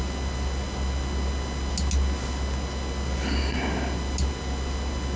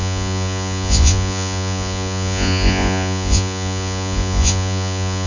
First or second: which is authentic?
first